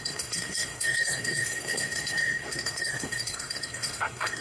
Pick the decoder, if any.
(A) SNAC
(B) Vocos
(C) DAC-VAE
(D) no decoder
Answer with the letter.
A